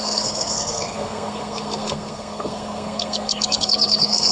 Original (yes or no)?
no